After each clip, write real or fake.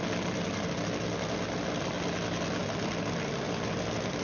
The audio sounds real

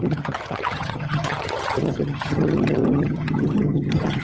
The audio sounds fake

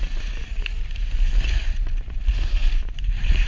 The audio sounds real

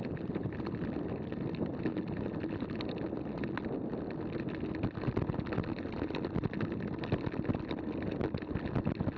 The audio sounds real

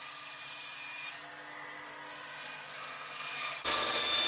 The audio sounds real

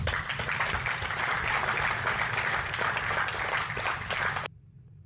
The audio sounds real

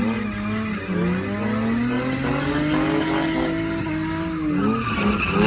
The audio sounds real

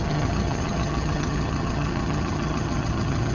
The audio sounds fake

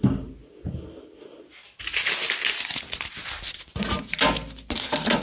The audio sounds real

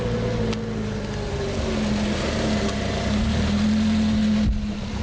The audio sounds real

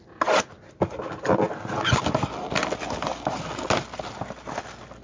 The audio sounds real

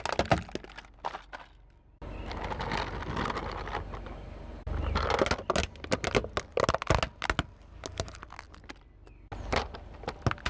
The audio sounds real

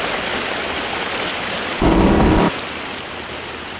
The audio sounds real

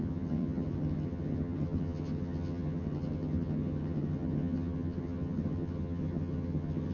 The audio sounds fake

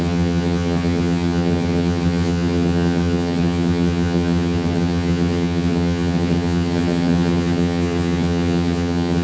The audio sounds fake